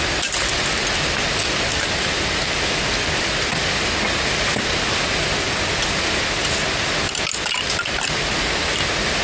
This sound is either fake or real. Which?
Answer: real